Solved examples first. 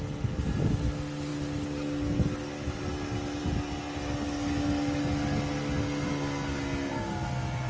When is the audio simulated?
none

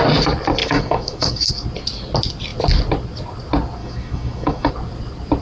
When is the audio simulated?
0.6-1.5 (autoencoder, DAC-VAE); 3.8-4.7

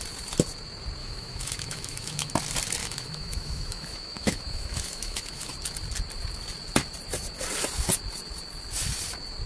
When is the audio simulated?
1.0-2.3 (autoencoder, DAC-VAE); 2.8-5.5

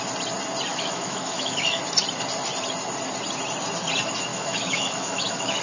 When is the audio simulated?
0.7-1.8 (autoencoder, DAC-VAE); 4.3-5.6

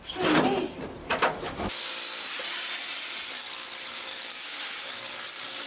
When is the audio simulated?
1.0-1.8 (autoencoder, DAC-VAE); 4.1-5.0

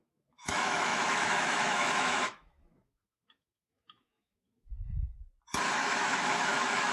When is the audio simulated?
0.0-4.7 (autoencoder, DAC-VAE); 5.7-6.9

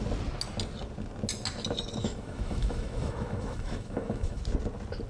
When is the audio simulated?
2.0-4.4 (autoencoder, DAC-VAE)